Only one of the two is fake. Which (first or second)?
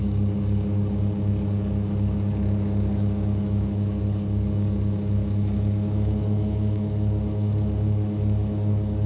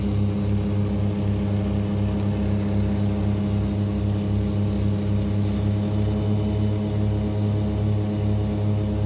first